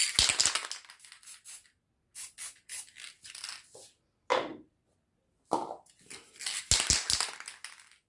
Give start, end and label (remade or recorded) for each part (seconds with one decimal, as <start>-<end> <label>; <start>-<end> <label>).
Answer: 0.0-8.1 recorded